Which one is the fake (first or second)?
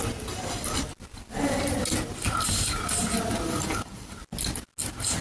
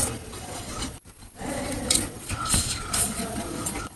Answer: second